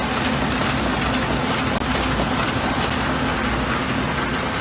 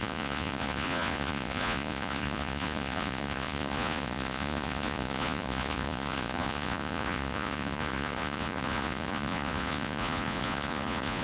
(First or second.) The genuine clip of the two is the first